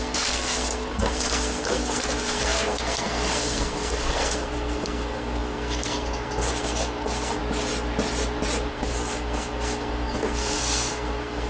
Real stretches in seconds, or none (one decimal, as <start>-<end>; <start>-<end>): 7.4-8.7